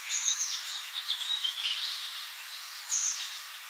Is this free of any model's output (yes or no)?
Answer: no